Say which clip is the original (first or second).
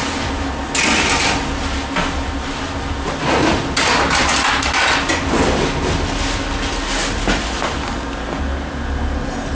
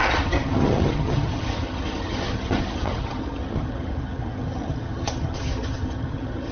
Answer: first